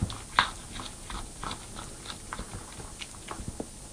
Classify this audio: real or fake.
real